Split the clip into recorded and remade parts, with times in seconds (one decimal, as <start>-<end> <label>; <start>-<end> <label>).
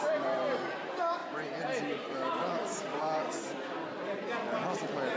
0.0-5.2 recorded